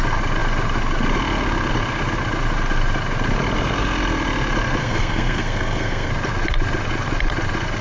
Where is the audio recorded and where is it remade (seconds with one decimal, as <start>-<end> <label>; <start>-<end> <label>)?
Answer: 0.0-4.8 recorded; 4.8-6.1 remade; 6.1-7.8 recorded